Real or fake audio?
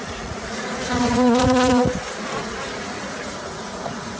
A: fake